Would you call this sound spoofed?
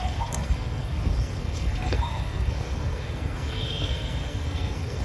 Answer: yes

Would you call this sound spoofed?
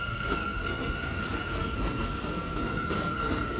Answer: yes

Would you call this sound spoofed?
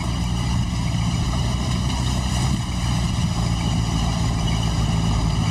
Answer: no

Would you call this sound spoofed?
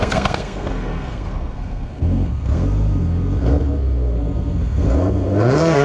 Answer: yes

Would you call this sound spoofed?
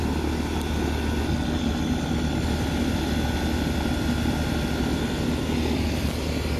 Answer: no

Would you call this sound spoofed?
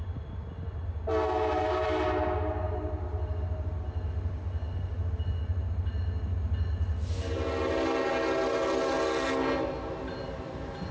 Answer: no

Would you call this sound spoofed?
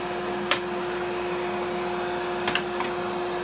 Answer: no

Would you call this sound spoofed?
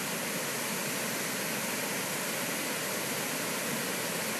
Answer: no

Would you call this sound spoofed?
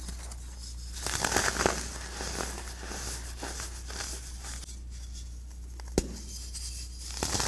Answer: no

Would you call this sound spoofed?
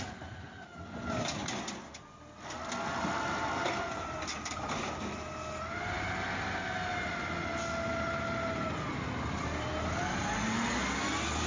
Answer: no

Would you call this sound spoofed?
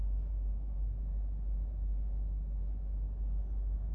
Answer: no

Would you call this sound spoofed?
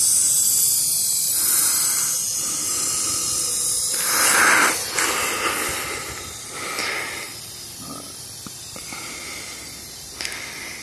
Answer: no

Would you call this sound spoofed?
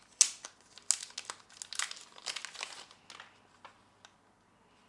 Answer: no